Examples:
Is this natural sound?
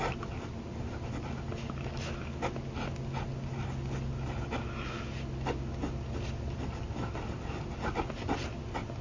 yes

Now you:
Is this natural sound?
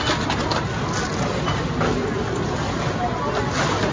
yes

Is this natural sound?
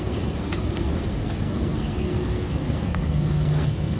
no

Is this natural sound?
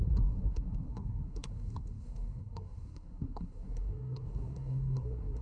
no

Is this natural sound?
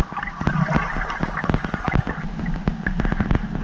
yes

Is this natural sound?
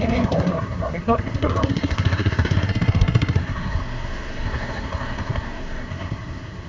no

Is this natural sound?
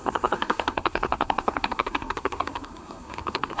no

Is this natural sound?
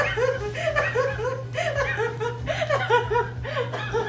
yes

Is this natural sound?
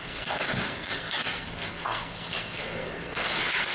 no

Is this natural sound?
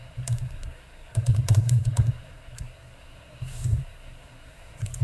no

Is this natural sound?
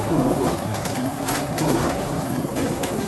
no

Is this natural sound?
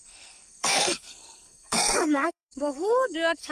no